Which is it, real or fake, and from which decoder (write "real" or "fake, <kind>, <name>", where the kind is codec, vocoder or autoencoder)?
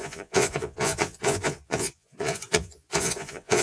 fake, vocoder, Vocos